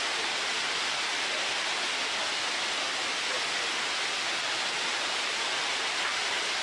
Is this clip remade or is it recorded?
recorded